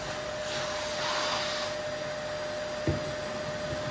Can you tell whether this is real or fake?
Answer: real